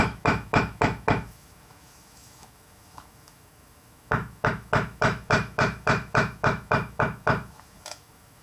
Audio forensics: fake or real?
fake